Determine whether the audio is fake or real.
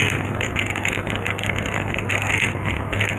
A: fake